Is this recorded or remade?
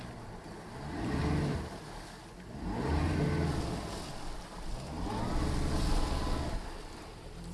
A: recorded